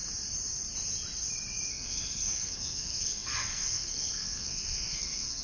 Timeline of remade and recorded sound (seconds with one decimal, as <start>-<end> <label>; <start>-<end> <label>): 0.0-1.7 recorded; 1.7-5.4 remade

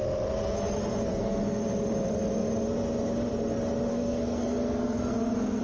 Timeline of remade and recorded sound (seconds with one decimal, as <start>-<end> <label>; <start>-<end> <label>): 0.0-1.1 recorded; 1.1-1.6 remade; 1.6-3.9 recorded; 3.9-5.6 remade

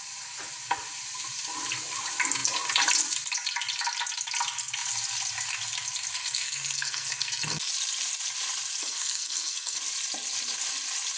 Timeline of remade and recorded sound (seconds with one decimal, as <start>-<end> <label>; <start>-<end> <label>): 0.0-6.2 recorded; 6.2-7.7 remade; 7.7-8.8 recorded; 8.8-9.8 remade; 9.8-11.2 recorded

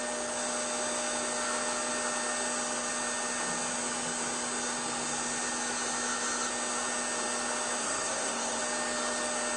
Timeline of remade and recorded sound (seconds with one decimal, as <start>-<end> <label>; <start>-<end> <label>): 0.0-7.8 recorded; 7.8-8.6 remade; 8.6-9.6 recorded

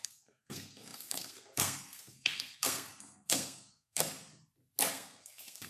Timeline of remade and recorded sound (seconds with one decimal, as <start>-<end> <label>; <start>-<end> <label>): 0.0-4.3 remade; 4.3-4.9 recorded; 4.9-5.7 remade

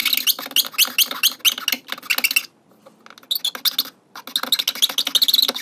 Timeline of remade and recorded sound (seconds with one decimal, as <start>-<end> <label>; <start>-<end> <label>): 0.0-5.6 recorded

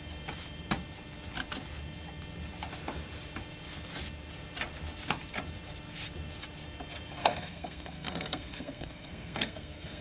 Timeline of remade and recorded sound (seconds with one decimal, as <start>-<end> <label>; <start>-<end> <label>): 0.0-7.2 recorded; 7.2-10.0 remade

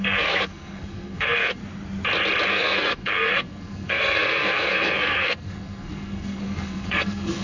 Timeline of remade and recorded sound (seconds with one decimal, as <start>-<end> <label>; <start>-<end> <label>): 0.0-1.6 remade; 1.6-2.5 recorded; 2.5-7.4 remade